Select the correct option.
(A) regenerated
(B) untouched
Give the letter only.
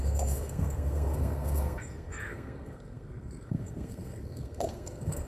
A